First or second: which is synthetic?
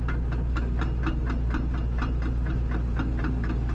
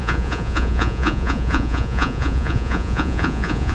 second